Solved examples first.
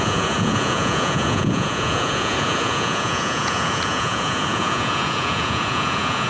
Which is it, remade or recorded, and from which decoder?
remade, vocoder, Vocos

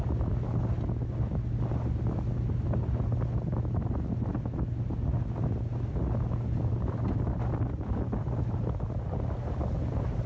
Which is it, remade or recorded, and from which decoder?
recorded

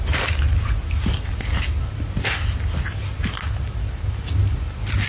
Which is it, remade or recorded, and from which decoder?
recorded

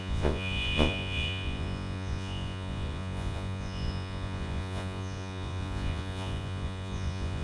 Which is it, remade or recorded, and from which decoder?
remade, vocoder, Vocos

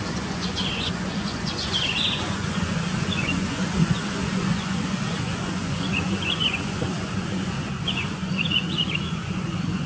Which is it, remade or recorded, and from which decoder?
remade, vocoder, Vocos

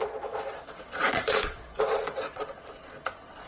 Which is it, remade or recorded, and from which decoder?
remade, vocoder, Vocos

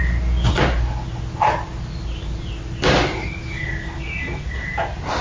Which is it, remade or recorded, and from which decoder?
recorded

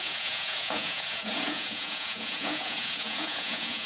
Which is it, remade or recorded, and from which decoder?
remade, vocoder, Vocos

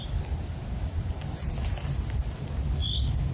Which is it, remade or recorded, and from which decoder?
recorded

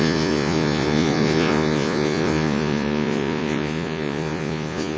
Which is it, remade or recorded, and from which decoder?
remade, vocoder, Vocos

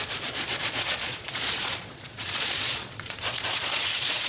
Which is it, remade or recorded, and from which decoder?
remade, vocoder, Vocos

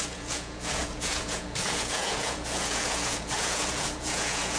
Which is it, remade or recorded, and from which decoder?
remade, vocoder, Vocos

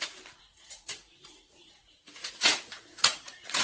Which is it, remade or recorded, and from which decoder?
remade, vocoder, Vocos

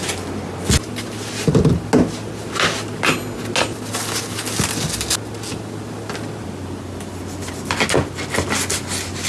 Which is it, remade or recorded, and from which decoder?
recorded